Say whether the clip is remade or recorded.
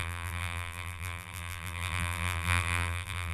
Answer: remade